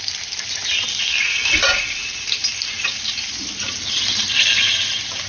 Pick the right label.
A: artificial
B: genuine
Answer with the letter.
B